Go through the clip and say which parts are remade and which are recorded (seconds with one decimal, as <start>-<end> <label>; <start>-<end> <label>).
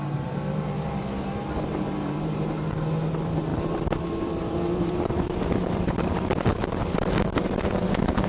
0.0-8.3 remade